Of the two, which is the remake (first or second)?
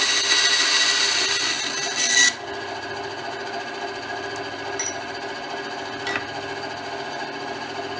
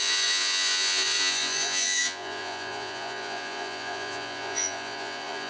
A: second